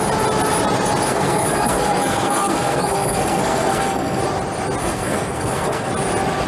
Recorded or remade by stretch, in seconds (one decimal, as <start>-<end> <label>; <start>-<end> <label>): 0.0-1.1 recorded; 1.1-4.2 remade; 4.2-4.8 recorded; 4.8-5.9 remade; 5.9-6.5 recorded